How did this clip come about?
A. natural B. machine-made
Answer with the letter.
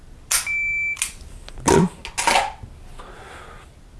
A